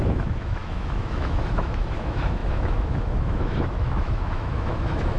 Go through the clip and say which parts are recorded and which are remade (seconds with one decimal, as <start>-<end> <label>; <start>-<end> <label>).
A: 0.0-5.2 remade